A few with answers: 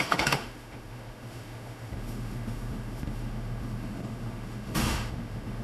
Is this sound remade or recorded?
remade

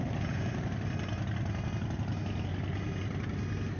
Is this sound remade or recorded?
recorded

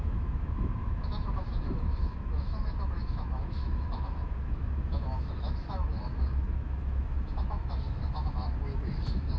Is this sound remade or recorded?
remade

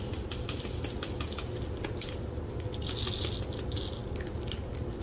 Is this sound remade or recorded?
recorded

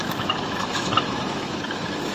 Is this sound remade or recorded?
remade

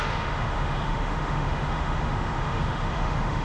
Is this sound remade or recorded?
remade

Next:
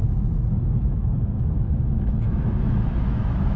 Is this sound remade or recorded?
remade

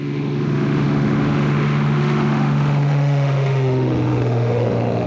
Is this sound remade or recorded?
remade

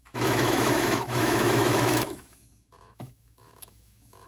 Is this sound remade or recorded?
remade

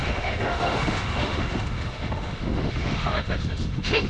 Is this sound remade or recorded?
remade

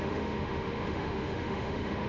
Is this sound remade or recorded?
remade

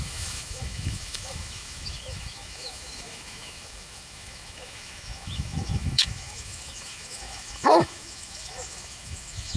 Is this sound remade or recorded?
remade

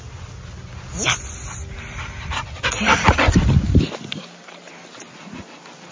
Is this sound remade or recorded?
recorded